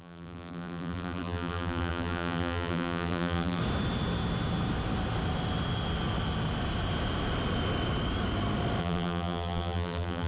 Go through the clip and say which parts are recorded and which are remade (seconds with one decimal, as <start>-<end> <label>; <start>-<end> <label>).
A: 0.0-3.6 remade; 3.6-8.8 recorded; 8.8-10.3 remade